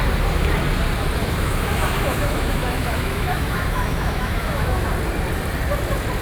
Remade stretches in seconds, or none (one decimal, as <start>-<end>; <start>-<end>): 1.2-4.9